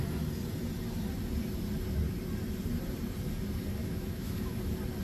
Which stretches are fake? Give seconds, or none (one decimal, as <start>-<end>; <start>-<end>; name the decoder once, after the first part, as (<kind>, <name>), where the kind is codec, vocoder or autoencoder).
3.8-4.6 (autoencoder, DAC-VAE)